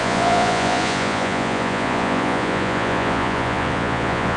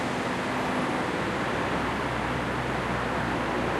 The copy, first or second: first